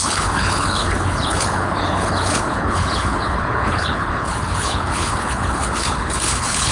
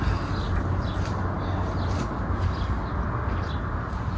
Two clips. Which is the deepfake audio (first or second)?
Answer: first